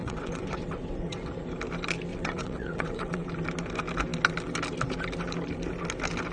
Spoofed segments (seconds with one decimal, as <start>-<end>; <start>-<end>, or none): 0.0-1.3; 2.1-3.3